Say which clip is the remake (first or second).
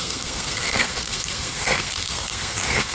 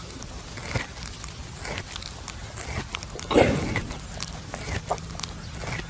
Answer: first